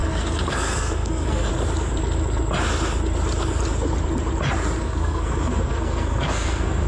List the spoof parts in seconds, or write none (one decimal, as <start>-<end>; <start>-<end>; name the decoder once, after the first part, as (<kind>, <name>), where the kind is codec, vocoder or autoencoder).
0.0-1.5 (codec, SNAC); 4.8-6.9